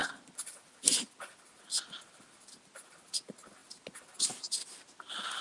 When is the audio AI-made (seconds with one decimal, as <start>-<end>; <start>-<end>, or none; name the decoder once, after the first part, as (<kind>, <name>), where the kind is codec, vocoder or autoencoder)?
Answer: none